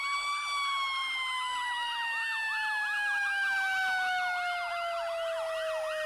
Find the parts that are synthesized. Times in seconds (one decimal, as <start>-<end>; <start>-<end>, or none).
none